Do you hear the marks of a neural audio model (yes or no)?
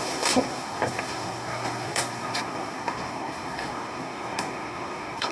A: yes